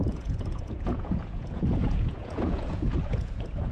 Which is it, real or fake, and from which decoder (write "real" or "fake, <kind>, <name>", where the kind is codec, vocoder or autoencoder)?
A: fake, vocoder, Vocos